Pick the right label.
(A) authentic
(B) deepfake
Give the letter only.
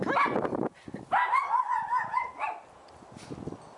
A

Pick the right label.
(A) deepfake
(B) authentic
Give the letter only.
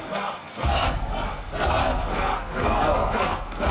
A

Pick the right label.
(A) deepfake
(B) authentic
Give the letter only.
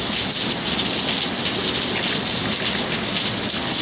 B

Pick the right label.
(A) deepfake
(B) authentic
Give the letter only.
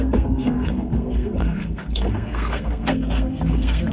A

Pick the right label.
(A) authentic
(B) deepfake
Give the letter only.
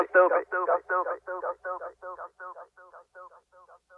A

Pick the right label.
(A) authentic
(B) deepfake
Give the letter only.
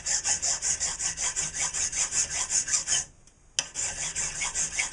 A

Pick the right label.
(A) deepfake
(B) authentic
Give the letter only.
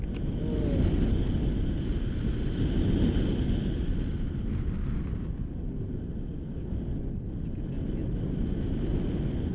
B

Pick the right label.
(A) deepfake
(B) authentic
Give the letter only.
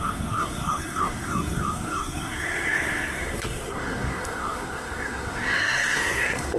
A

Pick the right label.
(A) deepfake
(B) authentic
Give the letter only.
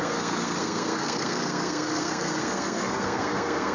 A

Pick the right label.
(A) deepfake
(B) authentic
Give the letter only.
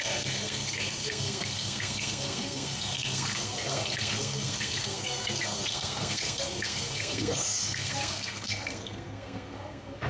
A